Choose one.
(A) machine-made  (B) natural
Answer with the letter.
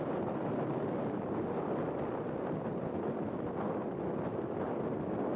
B